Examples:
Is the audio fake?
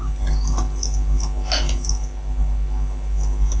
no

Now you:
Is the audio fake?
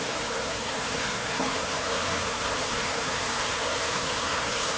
yes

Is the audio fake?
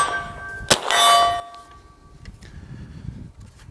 no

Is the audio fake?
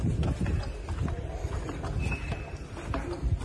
no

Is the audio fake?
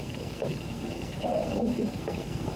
yes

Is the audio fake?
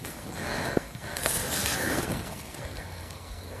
yes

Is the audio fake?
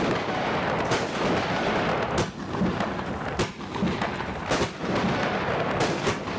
no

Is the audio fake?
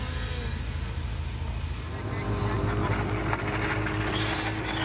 no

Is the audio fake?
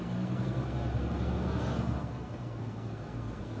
yes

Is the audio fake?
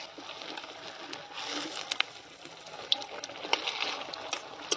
no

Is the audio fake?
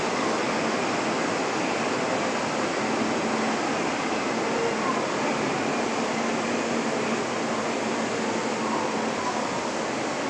no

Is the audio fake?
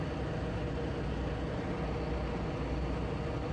no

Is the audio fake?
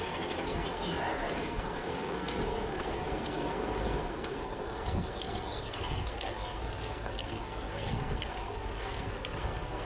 yes